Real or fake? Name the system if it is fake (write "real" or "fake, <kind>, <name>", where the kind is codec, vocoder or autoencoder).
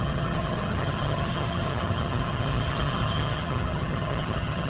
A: fake, vocoder, HiFi-GAN